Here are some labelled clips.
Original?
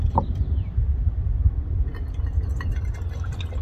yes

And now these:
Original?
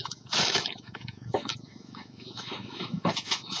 no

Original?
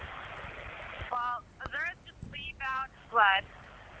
yes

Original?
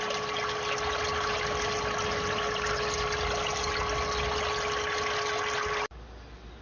yes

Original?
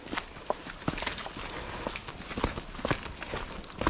yes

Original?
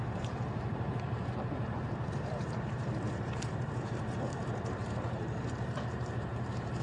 no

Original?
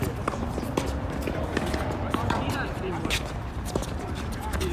no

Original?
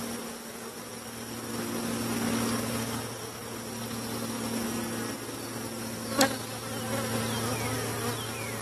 yes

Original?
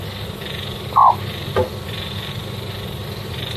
yes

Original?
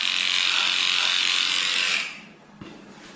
yes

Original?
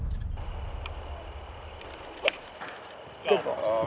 yes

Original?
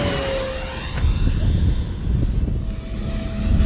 yes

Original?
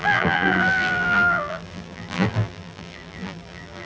no